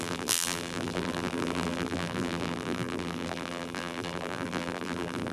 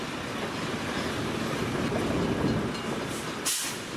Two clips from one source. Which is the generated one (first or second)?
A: first